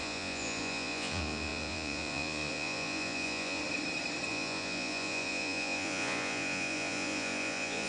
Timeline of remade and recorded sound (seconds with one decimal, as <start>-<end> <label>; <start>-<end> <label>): 0.0-3.6 remade; 3.6-4.3 recorded; 4.3-7.9 remade

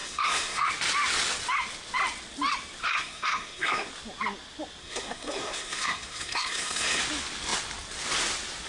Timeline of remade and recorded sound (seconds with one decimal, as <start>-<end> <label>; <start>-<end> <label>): 0.0-0.7 remade; 0.7-2.8 recorded; 2.8-3.9 remade; 3.9-4.8 recorded; 4.8-7.0 remade; 7.0-8.7 recorded

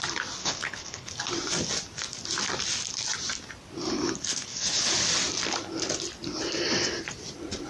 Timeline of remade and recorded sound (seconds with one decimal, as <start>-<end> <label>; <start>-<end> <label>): 0.0-0.4 recorded; 0.4-1.1 remade; 1.1-4.3 recorded; 4.3-4.9 remade; 4.9-7.7 recorded